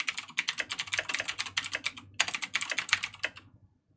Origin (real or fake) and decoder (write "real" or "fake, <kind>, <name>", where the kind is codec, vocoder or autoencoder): real